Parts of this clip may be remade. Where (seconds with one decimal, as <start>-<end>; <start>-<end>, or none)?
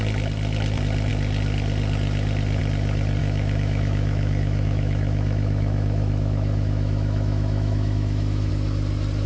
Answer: 3.2-8.5